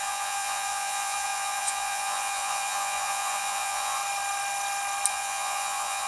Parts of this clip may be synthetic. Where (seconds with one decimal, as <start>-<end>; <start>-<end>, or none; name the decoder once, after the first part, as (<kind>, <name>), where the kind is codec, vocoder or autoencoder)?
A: 0.0-4.0 (vocoder, Vocos); 5.1-6.1